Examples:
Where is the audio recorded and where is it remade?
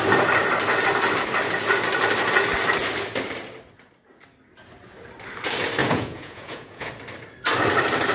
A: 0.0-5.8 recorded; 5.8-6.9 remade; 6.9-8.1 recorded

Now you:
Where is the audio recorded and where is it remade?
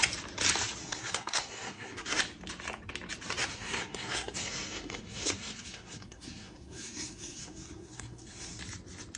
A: 0.0-0.8 recorded; 0.8-2.2 remade; 2.2-3.4 recorded; 3.4-8.6 remade; 8.6-9.2 recorded